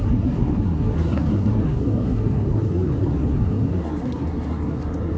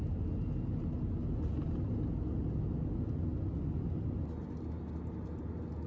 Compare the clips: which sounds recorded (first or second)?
second